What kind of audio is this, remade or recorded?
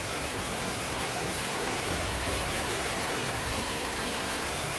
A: remade